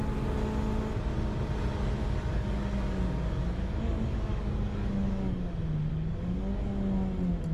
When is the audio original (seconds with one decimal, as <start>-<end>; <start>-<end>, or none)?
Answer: 0.0-2.0; 5.5-5.9; 6.6-7.5